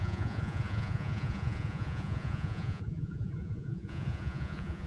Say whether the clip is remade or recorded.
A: remade